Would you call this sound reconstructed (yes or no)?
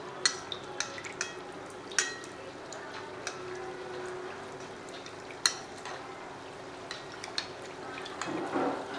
no